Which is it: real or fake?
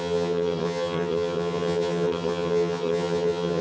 fake